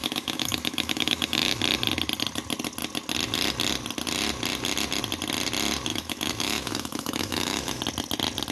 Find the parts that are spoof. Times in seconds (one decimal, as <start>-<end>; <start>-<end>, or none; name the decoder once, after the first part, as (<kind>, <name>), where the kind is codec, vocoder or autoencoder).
0.0-1.6 (autoencoder, DAC-VAE); 5.9-7.8